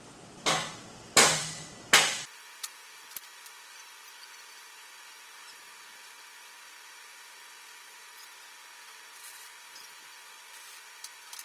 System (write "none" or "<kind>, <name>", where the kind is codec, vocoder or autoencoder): none